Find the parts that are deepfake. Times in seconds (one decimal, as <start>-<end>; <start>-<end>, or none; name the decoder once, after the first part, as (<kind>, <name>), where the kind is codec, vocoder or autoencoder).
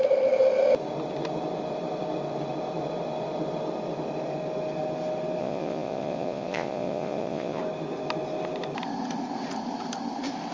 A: 5.4-7.6 (vocoder, Vocos)